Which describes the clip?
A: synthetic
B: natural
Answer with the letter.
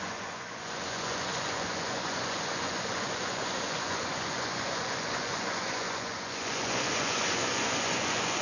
A